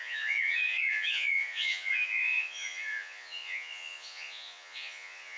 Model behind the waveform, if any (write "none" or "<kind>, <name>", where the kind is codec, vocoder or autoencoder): vocoder, Vocos